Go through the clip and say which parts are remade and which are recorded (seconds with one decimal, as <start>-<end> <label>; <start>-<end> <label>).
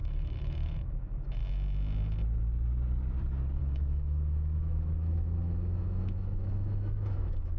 0.0-1.4 remade; 1.4-3.6 recorded; 3.6-7.6 remade